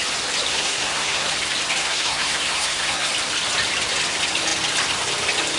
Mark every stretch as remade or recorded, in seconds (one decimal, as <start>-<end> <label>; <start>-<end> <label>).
0.0-0.5 recorded; 0.5-1.3 remade; 1.3-1.8 recorded; 1.8-3.1 remade; 3.1-5.6 recorded